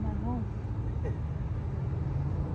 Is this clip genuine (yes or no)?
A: yes